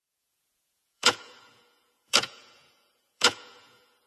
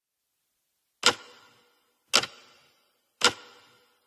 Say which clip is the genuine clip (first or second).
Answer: second